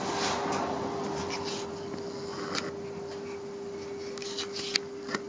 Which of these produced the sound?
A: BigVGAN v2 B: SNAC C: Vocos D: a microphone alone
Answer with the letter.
D